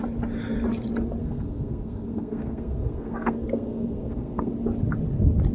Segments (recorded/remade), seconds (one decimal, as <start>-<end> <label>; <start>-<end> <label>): 0.0-1.2 recorded; 1.2-4.5 remade; 4.5-5.5 recorded